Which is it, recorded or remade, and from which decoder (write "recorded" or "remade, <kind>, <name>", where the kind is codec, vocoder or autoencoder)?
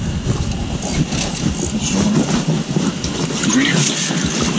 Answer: recorded